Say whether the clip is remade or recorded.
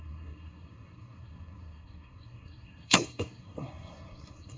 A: remade